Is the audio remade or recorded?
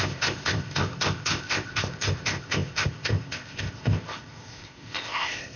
remade